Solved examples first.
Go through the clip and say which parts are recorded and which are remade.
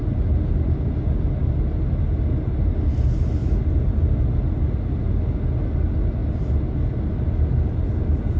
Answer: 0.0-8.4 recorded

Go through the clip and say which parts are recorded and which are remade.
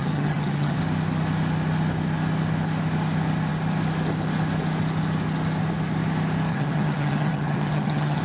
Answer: 0.0-0.8 remade; 0.8-6.5 recorded; 6.5-8.2 remade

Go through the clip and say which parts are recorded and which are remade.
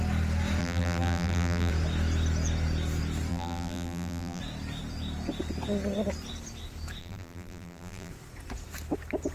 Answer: 0.0-0.6 recorded; 0.6-1.7 remade; 1.7-3.3 recorded; 3.3-4.4 remade; 4.4-7.0 recorded; 7.0-8.1 remade; 8.1-9.3 recorded